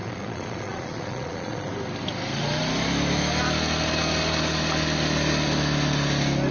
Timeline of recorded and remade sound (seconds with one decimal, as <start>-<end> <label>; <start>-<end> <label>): 0.0-1.7 remade; 1.7-6.5 recorded

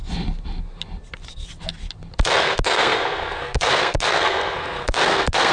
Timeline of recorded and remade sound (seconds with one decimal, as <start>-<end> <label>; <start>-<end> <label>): 0.0-2.2 recorded; 2.2-5.5 remade

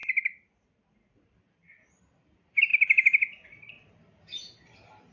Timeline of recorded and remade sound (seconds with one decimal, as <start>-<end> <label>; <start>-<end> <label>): 0.0-5.1 recorded

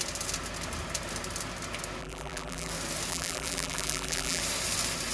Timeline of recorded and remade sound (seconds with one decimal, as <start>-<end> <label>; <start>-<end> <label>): 0.0-2.0 recorded; 2.0-2.7 remade; 2.7-3.1 recorded; 3.1-4.4 remade; 4.4-5.1 recorded

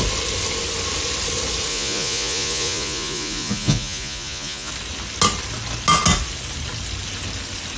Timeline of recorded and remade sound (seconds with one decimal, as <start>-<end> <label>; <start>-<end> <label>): 0.0-1.7 recorded; 1.7-4.7 remade; 4.7-7.8 recorded